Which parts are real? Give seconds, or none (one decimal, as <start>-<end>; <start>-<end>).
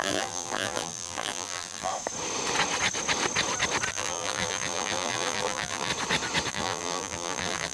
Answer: 1.9-3.9; 5.9-6.5